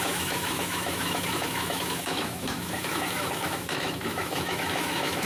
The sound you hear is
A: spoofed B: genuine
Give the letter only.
A